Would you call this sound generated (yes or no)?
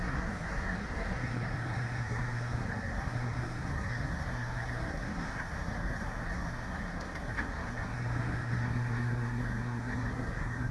yes